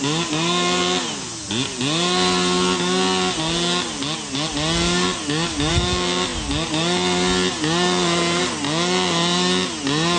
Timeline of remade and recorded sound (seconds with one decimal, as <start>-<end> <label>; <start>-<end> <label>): 0.0-10.2 recorded